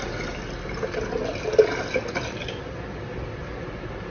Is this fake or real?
real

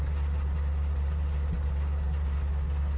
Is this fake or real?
real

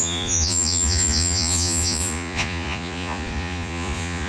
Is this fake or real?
fake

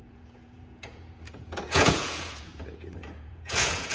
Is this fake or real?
fake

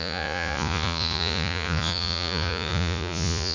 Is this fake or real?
fake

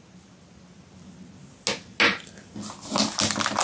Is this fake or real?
real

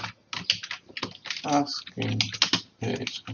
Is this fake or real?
real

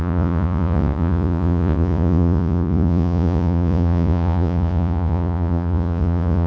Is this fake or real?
fake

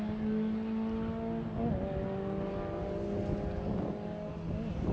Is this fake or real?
real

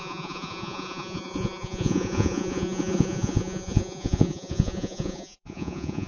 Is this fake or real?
fake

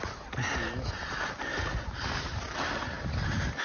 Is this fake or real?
real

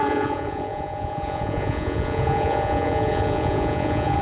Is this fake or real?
fake